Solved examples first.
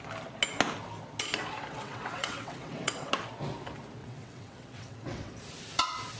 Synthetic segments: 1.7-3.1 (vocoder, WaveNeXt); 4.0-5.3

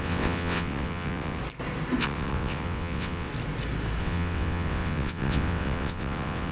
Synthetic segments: 0.0-1.4 (vocoder, WaveNeXt); 2.0-3.3; 4.0-6.5

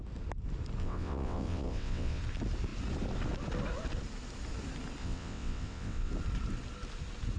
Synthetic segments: 0.8-2.2 (vocoder, WaveNeXt); 5.0-6.1

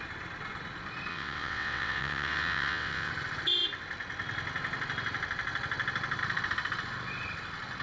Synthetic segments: 1.1-3.1 (vocoder, WaveNeXt)

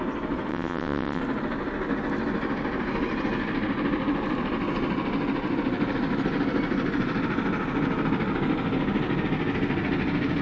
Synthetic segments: 0.5-1.2 (vocoder, WaveNeXt)